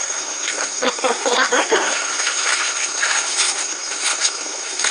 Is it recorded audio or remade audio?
remade